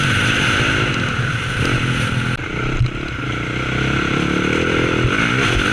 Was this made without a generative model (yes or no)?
yes